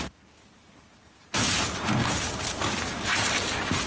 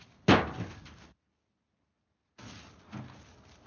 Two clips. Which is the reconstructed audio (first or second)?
first